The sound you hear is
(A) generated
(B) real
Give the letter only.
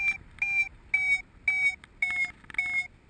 B